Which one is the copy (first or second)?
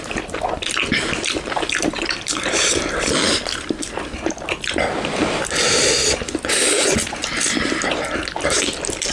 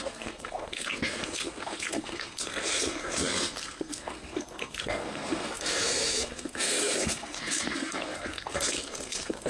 second